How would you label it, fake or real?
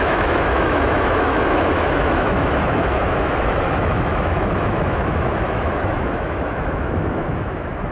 fake